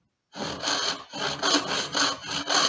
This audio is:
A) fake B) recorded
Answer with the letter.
B